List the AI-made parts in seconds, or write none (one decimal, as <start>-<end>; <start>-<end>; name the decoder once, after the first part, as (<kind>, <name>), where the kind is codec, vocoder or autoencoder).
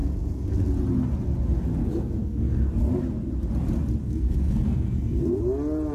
0.0-0.7 (codec, SNAC); 1.8-2.7; 4.0-5.4